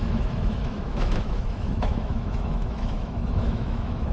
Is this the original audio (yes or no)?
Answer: no